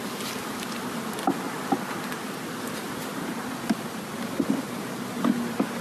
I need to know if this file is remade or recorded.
recorded